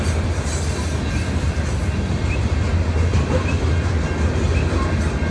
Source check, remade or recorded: recorded